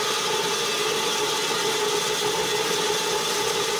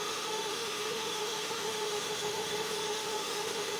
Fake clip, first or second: second